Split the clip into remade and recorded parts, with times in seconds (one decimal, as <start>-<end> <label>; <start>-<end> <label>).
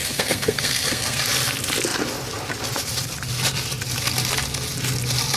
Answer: 0.0-1.2 remade; 1.2-5.4 recorded